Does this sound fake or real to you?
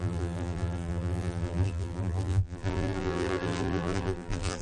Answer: fake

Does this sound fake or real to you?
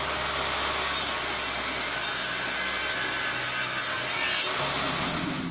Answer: real